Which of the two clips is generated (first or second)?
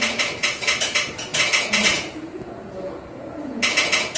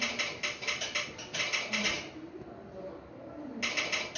first